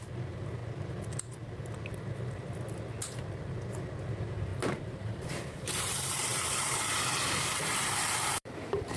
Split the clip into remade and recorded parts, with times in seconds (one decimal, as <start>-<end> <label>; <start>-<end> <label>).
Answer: 0.0-0.6 remade; 0.6-4.0 recorded; 4.0-9.0 remade

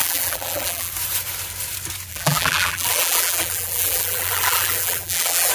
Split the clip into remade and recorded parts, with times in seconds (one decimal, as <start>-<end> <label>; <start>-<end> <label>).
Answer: 0.0-0.9 remade; 0.9-2.1 recorded; 2.1-5.5 remade

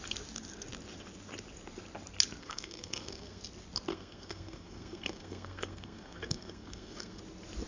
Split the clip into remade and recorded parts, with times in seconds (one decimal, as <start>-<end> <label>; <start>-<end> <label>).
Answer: 0.0-2.4 recorded; 2.4-3.4 remade; 3.4-3.9 recorded; 3.9-7.2 remade; 7.2-7.7 recorded

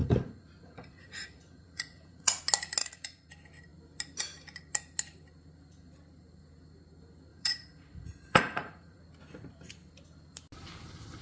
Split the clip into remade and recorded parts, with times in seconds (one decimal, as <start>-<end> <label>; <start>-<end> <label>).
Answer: 0.0-2.4 remade; 2.4-2.8 recorded; 2.8-3.3 remade; 3.3-7.3 recorded; 7.3-9.0 remade; 9.0-11.2 recorded

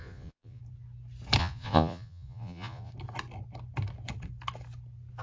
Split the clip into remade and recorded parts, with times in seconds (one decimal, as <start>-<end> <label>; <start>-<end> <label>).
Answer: 0.0-0.6 remade; 0.6-1.4 recorded; 1.4-2.9 remade; 2.9-5.2 recorded

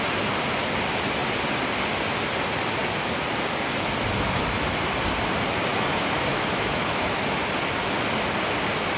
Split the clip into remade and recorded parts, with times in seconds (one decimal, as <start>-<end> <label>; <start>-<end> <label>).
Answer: 0.0-5.7 recorded; 5.7-7.2 remade; 7.2-9.0 recorded

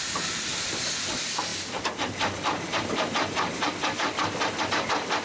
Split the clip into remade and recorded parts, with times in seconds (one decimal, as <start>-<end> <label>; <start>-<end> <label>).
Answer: 0.0-5.2 recorded